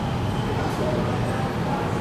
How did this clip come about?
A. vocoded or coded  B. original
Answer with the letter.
B